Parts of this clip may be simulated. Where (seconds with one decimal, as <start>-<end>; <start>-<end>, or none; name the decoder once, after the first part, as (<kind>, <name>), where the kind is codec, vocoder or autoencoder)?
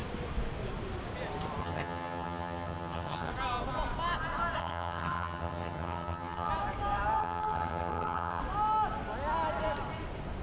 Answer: 1.6-3.3 (vocoder, HiFi-GAN); 4.6-6.5; 7.2-8.4